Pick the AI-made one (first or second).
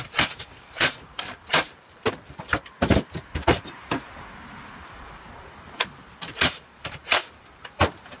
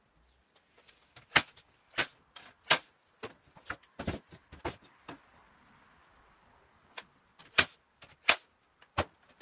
first